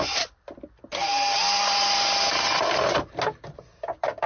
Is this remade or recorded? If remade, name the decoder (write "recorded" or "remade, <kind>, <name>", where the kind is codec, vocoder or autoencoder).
recorded